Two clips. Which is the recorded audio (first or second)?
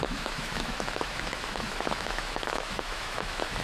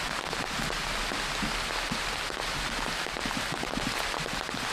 second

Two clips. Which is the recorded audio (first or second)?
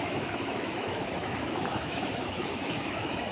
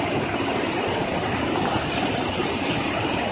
second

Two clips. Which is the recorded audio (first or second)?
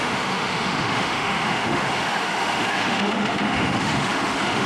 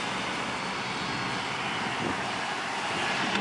second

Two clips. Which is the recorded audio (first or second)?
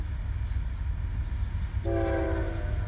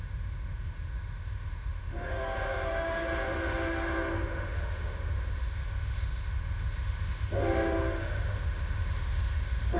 first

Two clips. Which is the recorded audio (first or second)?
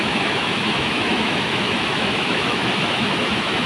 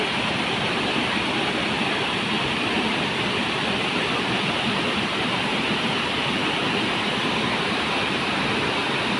second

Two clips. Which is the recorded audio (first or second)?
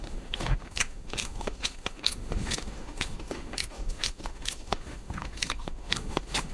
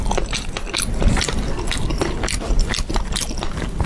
second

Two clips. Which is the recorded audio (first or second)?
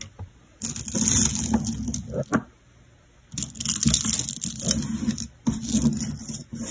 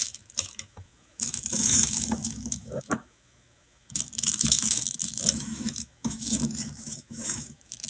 first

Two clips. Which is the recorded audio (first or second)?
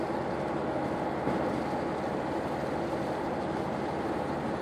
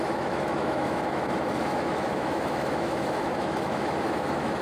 first